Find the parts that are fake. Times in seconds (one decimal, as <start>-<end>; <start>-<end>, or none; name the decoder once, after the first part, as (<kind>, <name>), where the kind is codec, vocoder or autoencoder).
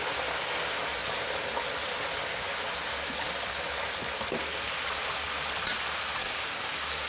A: 6.2-7.1 (codec, DAC)